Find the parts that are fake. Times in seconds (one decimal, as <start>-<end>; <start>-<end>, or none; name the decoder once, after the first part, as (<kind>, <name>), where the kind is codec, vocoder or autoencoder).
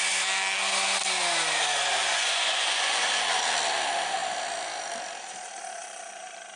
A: 2.0-3.3 (vocoder, Vocos)